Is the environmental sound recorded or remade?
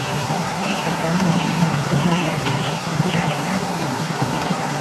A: remade